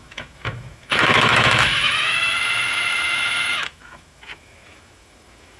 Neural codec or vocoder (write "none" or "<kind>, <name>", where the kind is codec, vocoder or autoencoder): autoencoder, DAC-VAE